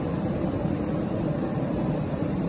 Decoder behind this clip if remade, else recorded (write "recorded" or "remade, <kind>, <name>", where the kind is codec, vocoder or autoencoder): remade, vocoder, BigVGAN v2